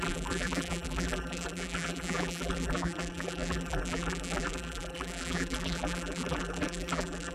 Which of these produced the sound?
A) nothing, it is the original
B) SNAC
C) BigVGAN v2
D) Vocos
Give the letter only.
C